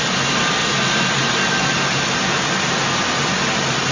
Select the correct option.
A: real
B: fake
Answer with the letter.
A